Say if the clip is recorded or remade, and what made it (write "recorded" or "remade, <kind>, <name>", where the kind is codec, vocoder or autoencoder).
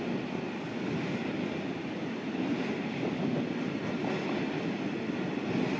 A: recorded